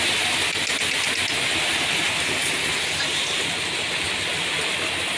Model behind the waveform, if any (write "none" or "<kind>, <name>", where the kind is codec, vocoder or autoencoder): none